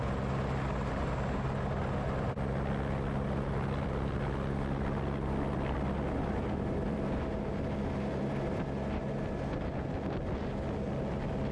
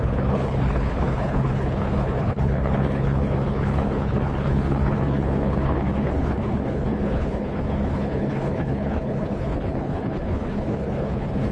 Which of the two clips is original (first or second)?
first